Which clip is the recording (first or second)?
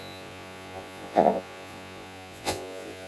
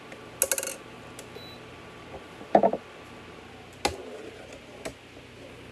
second